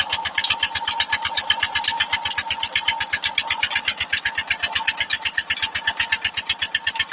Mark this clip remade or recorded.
recorded